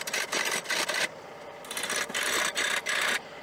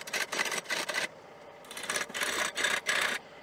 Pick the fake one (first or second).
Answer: second